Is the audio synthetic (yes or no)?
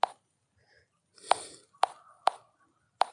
no